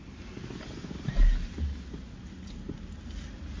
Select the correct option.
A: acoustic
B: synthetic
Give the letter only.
A